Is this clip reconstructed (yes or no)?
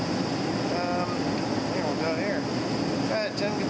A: no